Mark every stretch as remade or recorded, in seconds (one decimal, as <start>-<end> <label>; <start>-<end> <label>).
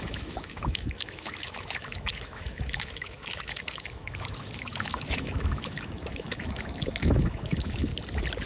0.0-7.9 remade; 7.9-8.5 recorded